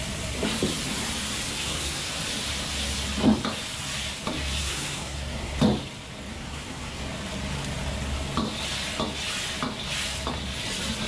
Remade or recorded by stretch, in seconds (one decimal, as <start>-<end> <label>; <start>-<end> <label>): 0.0-1.5 recorded; 1.5-2.1 remade; 2.1-4.6 recorded; 4.6-5.6 remade; 5.6-6.3 recorded; 6.3-7.0 remade; 7.0-11.1 recorded